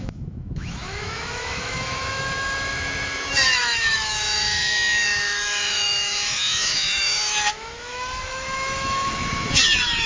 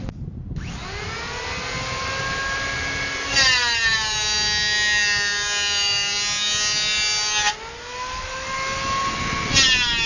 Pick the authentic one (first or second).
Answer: second